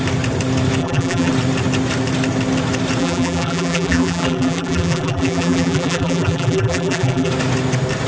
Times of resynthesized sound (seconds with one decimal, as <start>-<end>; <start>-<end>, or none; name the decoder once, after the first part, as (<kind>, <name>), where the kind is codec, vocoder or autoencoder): 0.8-1.3 (vocoder, BigVGAN v2); 3.0-7.3